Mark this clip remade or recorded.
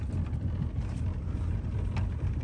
recorded